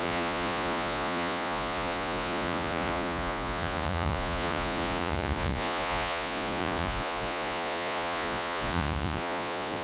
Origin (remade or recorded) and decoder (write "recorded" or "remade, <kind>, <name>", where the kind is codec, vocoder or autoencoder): remade, vocoder, Vocos